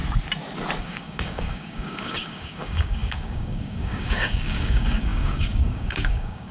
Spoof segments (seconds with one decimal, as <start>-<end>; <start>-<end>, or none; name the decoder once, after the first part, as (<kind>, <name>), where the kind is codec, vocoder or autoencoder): 0.8-6.5 (codec, DAC)